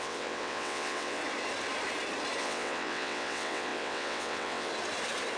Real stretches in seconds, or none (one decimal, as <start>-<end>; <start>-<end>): 1.2-2.4; 4.7-5.4